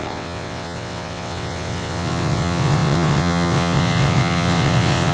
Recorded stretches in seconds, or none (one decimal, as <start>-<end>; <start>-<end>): none